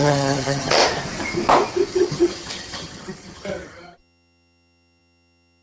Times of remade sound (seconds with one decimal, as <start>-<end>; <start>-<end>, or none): 0.0-0.8; 1.9-5.6